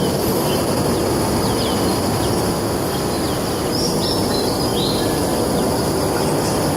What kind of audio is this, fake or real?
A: real